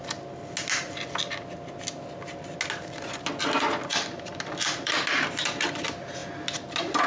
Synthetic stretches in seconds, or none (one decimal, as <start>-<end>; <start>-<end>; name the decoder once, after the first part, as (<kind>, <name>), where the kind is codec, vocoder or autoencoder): 3.9-5.8 (vocoder, BigVGAN v2)